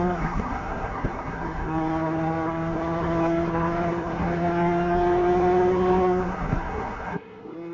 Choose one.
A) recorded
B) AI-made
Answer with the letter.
B